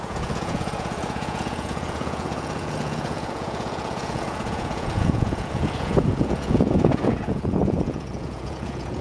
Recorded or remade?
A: remade